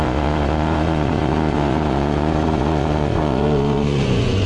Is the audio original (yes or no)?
no